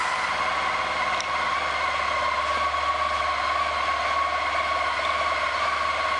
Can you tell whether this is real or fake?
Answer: real